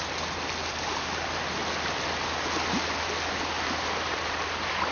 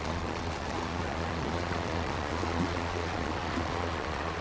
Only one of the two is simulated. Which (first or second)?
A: second